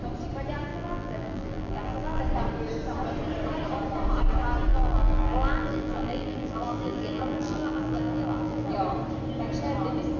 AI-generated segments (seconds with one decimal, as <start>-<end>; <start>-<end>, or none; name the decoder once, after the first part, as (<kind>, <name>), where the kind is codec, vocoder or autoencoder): 0.7-2.2 (vocoder, BigVGAN v2); 4.7-8.7